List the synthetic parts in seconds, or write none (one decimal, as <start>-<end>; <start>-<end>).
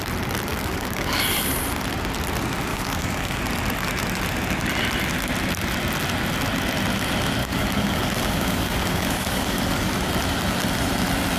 0.5-1.2; 2.7-3.4; 7.4-9.9